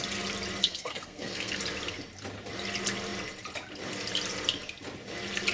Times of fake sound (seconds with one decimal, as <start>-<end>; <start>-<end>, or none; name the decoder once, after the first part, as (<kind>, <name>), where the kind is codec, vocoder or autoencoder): 0.6-1.6 (codec, SNAC)